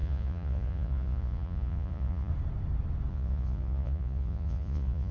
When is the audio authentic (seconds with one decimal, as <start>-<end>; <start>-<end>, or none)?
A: 2.3-3.1